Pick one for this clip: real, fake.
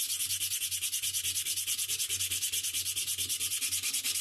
real